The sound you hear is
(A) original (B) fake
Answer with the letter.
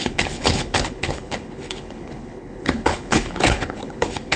B